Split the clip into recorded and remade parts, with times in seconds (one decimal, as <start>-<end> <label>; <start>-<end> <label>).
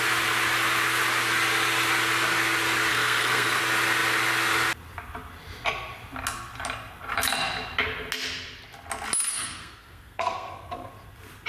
0.0-2.9 recorded; 2.9-3.6 remade; 3.6-9.3 recorded; 9.3-10.9 remade; 10.9-11.5 recorded